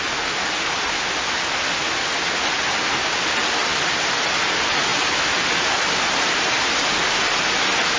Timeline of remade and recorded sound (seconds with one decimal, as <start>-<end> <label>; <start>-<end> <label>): 0.0-8.0 recorded